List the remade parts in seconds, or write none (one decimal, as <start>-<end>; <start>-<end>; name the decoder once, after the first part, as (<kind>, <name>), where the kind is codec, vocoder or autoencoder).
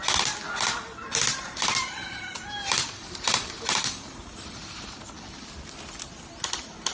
1.0-5.0 (vocoder, BigVGAN v2)